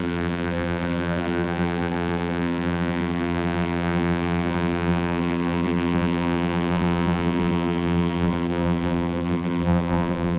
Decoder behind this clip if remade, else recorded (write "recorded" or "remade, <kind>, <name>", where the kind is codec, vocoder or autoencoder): remade, vocoder, BigVGAN v2